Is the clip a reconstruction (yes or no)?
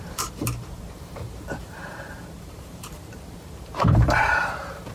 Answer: yes